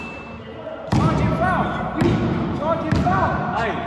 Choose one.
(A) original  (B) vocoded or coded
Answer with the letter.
A